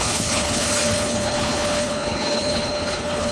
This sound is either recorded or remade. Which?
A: remade